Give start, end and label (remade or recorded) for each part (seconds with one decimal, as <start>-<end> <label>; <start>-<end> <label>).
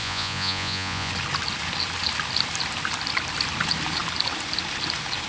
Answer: 0.0-1.1 remade; 1.1-5.3 recorded